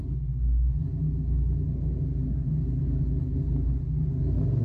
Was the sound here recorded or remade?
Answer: recorded